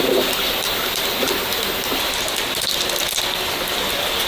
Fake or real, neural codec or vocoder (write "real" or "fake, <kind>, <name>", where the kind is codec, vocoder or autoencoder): real